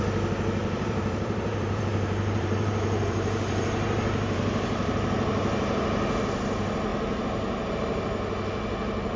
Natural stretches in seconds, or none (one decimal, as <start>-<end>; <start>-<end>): 0.0-0.6; 4.9-9.2